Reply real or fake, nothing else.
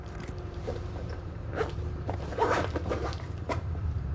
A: fake